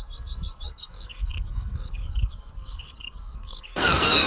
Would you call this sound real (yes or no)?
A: no